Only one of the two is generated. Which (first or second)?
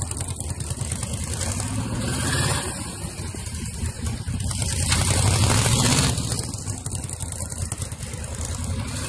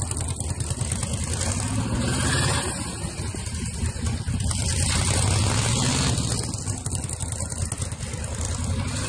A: first